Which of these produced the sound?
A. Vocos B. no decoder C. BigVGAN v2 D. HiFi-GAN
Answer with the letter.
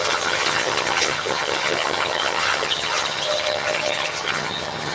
D